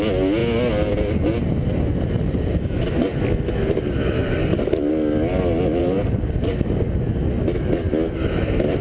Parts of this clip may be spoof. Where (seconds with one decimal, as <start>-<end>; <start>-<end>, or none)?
5.8-6.8